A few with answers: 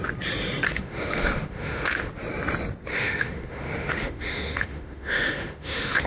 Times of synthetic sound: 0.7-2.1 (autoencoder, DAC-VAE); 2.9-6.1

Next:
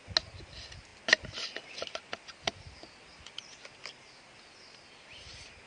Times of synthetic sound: none

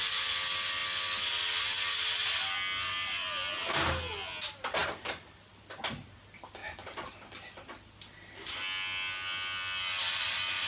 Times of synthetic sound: none

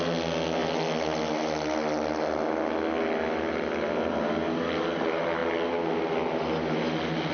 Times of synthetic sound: none

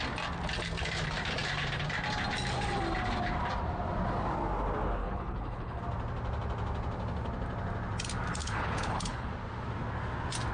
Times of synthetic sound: 5.0-5.8 (codec, HILCodec); 8.4-9.3

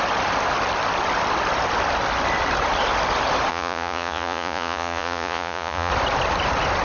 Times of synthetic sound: 3.5-5.9 (vocoder, Vocos)

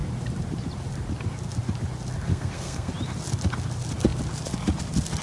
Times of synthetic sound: 2.3-2.9 (codec, SNAC)

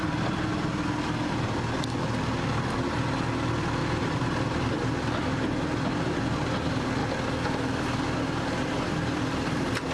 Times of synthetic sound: 3.8-4.7 (vocoder, BigVGAN v2)